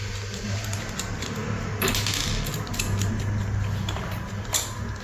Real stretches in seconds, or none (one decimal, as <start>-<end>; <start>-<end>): 0.0-5.0